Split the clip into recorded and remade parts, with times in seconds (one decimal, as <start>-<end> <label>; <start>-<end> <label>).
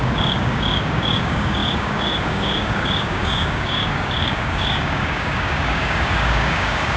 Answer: 0.0-7.0 remade